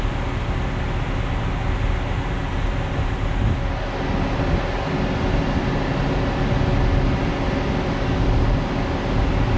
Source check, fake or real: real